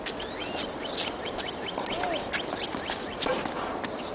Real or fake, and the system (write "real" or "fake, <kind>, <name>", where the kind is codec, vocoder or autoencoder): real